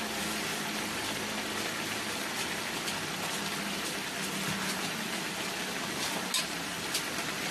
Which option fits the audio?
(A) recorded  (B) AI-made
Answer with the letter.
A